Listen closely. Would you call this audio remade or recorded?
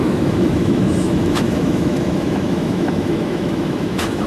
remade